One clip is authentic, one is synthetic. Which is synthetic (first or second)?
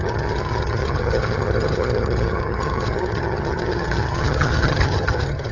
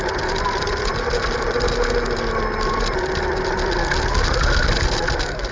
first